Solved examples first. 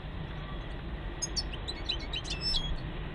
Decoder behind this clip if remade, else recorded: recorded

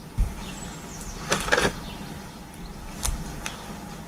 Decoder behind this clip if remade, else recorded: recorded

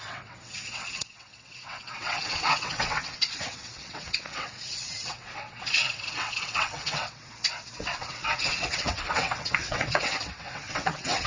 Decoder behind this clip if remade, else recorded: remade, vocoder, WaveNeXt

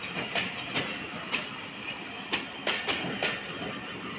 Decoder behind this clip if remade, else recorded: recorded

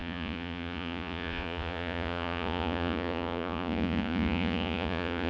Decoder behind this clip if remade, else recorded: remade, vocoder, Vocos